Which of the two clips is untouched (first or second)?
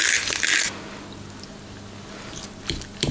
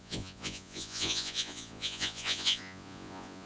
first